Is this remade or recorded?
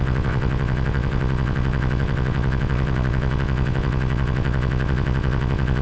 remade